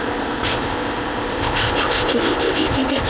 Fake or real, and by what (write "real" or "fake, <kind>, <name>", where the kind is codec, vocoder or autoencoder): fake, codec, ZipCodec